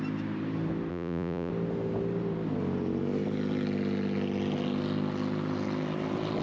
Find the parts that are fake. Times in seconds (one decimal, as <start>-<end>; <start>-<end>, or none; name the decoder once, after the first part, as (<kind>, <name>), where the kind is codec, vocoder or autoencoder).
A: 0.9-1.5 (vocoder, Vocos)